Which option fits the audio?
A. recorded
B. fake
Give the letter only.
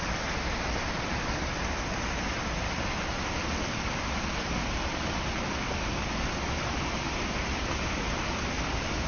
A